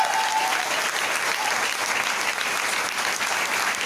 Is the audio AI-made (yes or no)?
no